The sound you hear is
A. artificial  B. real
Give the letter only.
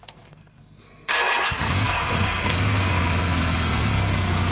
A